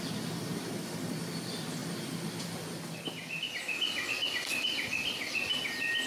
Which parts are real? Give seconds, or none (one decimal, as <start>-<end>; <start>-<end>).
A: 0.0-6.1